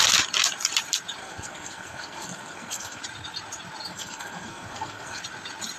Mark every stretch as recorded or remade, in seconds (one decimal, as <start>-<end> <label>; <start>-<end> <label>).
0.0-1.2 recorded; 1.2-3.0 remade; 3.0-3.9 recorded; 3.9-5.2 remade; 5.2-5.8 recorded